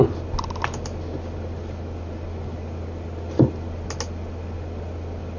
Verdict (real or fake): real